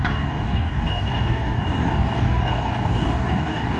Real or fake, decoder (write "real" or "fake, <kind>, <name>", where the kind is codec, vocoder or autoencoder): fake, codec, DAC